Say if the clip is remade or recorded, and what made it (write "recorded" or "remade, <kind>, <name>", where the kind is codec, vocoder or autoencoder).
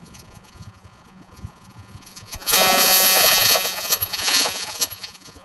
remade, vocoder, Vocos